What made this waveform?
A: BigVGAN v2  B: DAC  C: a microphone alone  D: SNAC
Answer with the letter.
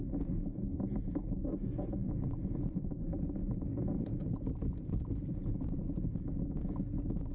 C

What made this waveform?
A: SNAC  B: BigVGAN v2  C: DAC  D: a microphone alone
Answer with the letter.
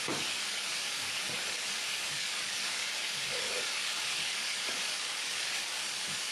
C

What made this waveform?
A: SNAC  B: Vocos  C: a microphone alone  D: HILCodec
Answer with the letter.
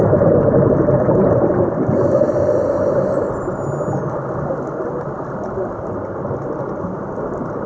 C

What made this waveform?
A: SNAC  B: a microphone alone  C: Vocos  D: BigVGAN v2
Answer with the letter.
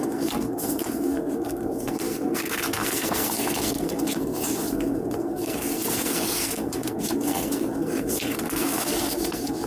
A